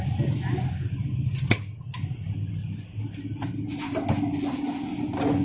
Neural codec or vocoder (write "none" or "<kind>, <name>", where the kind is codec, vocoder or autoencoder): none